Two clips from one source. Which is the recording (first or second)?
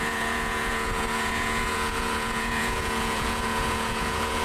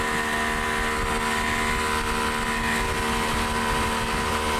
second